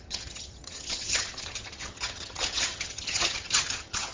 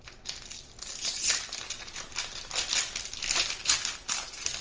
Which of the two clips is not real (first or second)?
first